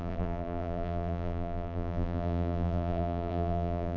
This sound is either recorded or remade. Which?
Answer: remade